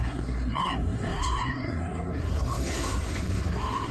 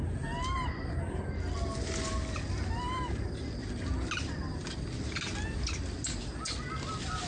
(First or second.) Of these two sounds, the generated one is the first